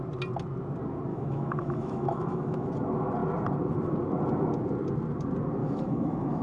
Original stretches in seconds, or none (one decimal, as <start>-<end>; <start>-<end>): 0.0-1.1; 2.7-5.6

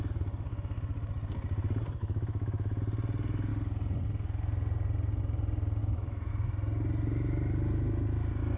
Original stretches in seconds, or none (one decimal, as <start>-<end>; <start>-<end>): 0.0-2.0; 2.8-5.8; 6.3-8.6

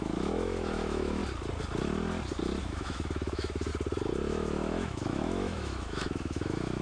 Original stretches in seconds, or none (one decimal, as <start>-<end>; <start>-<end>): 1.2-2.6; 3.7-4.3

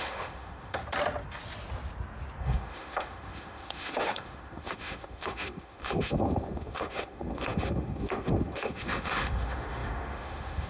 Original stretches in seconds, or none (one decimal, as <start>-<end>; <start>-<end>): 0.8-2.4

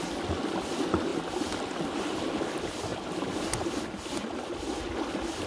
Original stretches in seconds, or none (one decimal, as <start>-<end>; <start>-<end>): 0.0-5.5